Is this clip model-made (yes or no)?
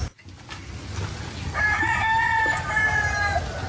no